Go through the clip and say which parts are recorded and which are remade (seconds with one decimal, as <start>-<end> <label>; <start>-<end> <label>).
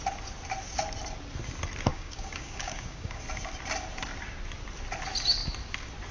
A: 0.0-1.9 recorded; 1.9-3.2 remade; 3.2-6.1 recorded